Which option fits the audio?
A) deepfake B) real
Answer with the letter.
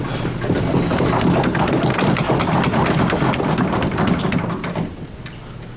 B